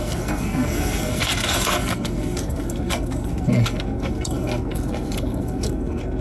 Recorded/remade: remade